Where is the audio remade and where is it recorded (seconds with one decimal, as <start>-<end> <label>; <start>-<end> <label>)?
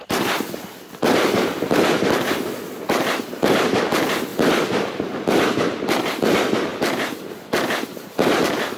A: 0.0-4.3 remade; 4.3-5.7 recorded; 5.7-8.8 remade